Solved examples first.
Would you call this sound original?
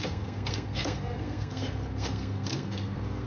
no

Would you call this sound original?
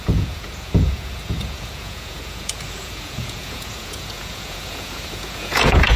no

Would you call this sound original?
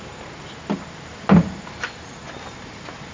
yes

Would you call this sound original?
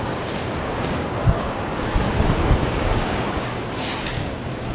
no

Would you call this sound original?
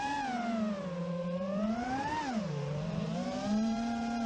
no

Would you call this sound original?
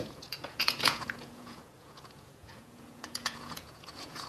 no